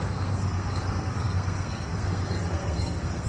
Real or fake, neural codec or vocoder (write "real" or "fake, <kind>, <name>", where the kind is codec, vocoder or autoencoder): fake, codec, SNAC